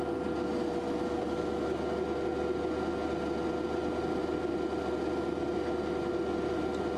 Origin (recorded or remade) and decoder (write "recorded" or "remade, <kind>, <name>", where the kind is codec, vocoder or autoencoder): recorded